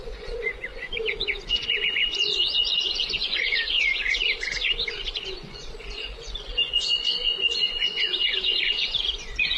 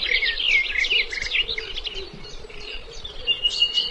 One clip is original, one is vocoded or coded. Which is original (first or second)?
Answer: second